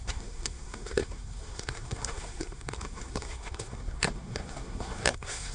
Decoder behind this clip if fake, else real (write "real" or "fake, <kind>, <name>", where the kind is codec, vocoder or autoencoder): fake, codec, SNAC